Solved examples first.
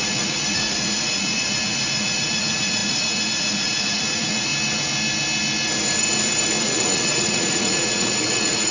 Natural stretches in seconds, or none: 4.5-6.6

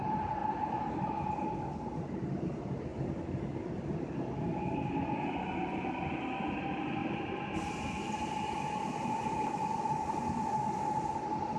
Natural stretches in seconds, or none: 0.0-11.6

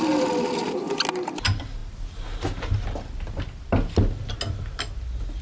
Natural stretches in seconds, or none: 0.0-5.4

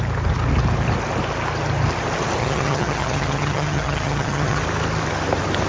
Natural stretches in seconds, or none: 0.0-2.4; 4.6-5.7